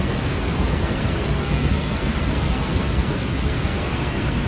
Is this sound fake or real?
fake